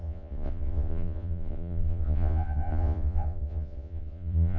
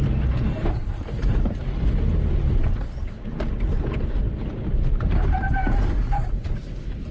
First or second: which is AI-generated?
first